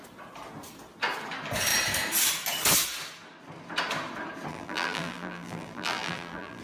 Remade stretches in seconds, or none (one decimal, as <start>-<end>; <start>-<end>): 4.5-6.6